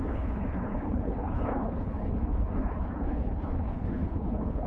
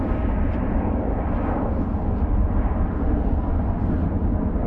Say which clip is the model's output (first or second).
first